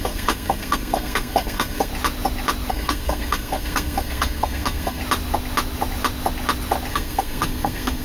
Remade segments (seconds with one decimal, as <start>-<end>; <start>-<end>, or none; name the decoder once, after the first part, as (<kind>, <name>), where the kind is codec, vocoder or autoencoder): 0.0-1.9 (codec, SNAC); 2.7-5.0; 6.9-8.0